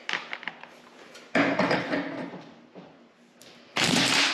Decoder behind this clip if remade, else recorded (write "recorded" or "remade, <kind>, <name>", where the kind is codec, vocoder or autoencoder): recorded